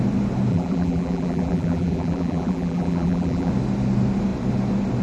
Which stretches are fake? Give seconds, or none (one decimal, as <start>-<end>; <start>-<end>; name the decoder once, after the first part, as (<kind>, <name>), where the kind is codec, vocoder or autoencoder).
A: 0.5-3.5 (vocoder, BigVGAN v2)